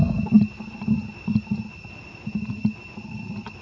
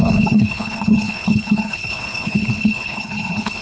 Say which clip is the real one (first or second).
first